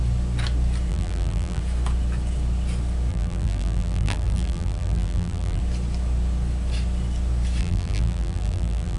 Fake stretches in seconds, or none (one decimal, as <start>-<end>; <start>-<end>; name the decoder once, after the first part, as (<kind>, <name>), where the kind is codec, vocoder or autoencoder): 0.9-1.6 (vocoder, BigVGAN v2); 3.1-5.6; 7.6-9.0